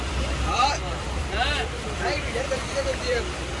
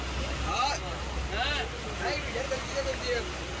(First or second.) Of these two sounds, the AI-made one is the first